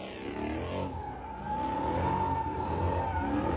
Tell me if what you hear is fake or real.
real